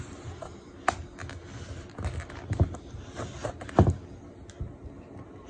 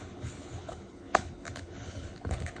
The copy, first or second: second